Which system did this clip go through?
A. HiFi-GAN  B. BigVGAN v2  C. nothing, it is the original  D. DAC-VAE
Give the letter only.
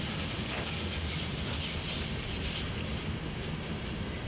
C